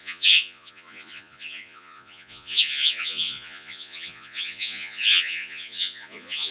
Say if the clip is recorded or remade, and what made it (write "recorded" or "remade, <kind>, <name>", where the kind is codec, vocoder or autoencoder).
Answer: remade, vocoder, Vocos